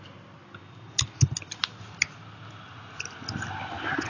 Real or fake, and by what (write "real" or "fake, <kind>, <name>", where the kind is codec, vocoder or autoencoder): real